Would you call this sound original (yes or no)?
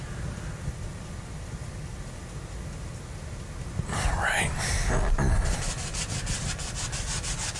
yes